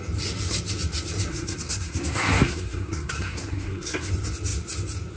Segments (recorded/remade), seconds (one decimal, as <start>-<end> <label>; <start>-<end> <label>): 0.0-1.3 recorded; 1.3-4.1 remade; 4.1-5.2 recorded